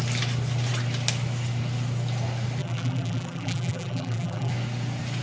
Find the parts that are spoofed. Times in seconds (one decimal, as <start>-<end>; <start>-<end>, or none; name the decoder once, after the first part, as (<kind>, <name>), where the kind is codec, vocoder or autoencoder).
2.6-4.5 (vocoder, BigVGAN v2)

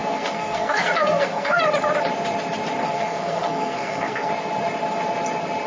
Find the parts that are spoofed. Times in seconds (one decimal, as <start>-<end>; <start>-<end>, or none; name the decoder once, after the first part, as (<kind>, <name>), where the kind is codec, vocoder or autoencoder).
0.0-1.6 (codec, SNAC); 2.8-4.3

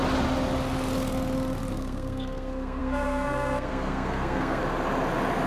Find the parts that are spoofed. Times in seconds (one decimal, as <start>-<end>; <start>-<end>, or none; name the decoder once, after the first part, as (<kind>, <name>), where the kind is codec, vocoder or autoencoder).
1.7-4.6 (codec, SNAC)

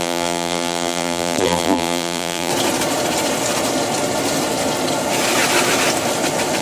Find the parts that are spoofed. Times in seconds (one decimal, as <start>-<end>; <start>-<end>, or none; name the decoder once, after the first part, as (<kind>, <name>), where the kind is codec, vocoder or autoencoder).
0.0-2.5 (vocoder, BigVGAN v2)

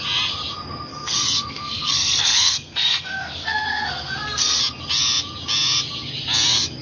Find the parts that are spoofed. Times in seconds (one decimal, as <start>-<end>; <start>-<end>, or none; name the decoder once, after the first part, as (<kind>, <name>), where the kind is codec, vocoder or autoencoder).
0.9-4.6 (codec, SNAC)

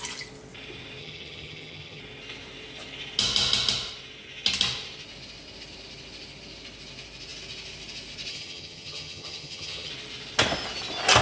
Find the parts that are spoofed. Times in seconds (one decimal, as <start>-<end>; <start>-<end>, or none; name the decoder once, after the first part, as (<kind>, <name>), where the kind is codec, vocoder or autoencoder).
1.0-2.0 (vocoder, HiFi-GAN); 8.3-9.9